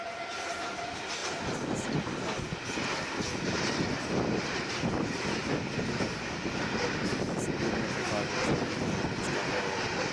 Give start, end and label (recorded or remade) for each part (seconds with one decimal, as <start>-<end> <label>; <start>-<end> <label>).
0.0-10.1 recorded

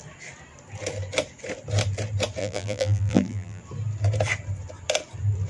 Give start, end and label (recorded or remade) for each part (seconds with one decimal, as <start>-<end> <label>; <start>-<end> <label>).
0.0-2.4 recorded; 2.4-3.6 remade; 3.6-5.5 recorded

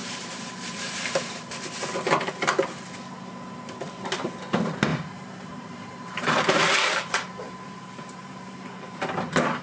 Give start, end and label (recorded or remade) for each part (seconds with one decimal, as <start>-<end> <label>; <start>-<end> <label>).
0.0-1.4 remade; 1.4-4.9 recorded; 4.9-9.0 remade; 9.0-9.6 recorded

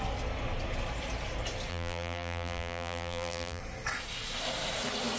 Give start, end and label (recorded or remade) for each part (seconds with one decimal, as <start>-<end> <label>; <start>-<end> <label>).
0.0-1.7 recorded; 1.7-3.6 remade; 3.6-5.2 recorded

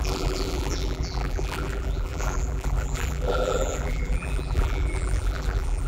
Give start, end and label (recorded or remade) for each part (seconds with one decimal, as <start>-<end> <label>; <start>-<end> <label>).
0.0-5.9 remade